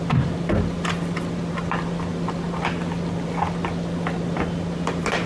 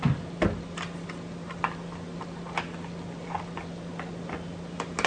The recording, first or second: second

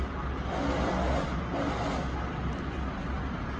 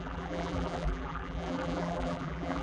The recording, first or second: first